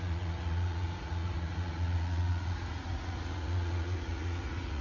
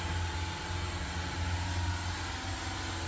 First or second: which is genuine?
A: second